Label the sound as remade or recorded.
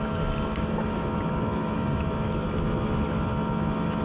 recorded